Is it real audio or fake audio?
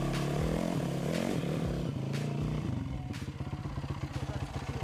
real